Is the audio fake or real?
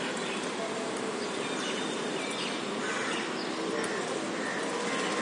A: real